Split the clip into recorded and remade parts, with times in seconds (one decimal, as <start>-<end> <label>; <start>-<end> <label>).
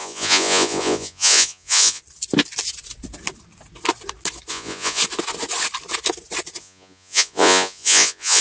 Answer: 0.0-2.0 remade; 2.0-4.5 recorded; 4.5-5.0 remade; 5.0-6.6 recorded; 6.6-8.4 remade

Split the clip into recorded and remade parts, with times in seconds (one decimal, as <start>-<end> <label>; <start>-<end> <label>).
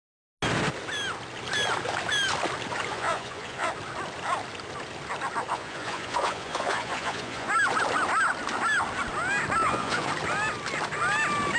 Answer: 0.0-2.9 recorded; 2.9-3.7 remade; 3.7-5.5 recorded; 5.5-7.5 remade; 7.5-9.6 recorded; 9.6-10.1 remade; 10.1-11.6 recorded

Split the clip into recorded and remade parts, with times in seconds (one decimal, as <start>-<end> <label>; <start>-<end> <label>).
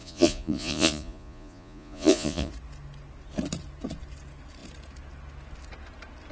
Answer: 0.0-2.5 remade; 2.5-6.3 recorded